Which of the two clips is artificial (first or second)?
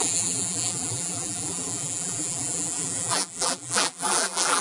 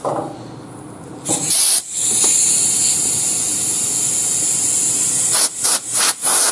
first